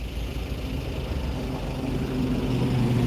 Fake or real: real